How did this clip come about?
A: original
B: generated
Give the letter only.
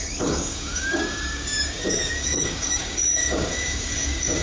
B